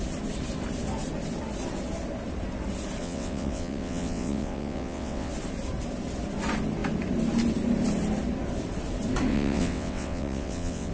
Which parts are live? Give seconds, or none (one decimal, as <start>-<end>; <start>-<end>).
0.0-3.0; 5.3-9.3